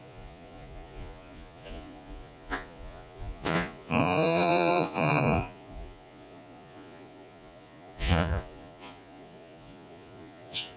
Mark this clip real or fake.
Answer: fake